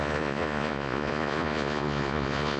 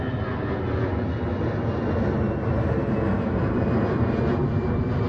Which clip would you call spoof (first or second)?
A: first